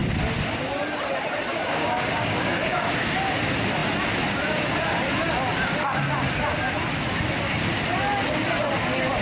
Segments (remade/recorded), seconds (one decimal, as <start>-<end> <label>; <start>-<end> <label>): 0.0-1.5 recorded; 1.5-2.9 remade; 2.9-9.2 recorded